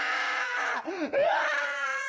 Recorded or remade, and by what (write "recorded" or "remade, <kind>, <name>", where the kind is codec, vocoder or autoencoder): remade, vocoder, Vocos